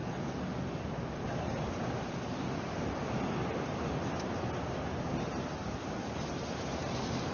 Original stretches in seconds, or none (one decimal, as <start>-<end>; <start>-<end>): 0.0-7.3